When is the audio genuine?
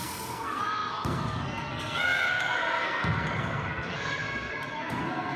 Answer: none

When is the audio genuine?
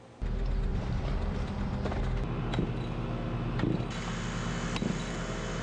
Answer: 0.0-0.7; 2.0-5.6